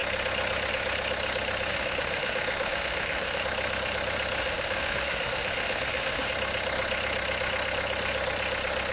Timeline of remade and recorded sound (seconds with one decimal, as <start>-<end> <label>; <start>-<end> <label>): 0.0-1.7 recorded; 1.7-3.4 remade; 3.4-4.4 recorded; 4.4-6.3 remade; 6.3-8.9 recorded